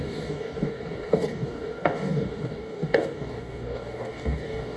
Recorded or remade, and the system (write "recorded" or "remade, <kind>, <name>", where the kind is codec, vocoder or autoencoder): remade, codec, DAC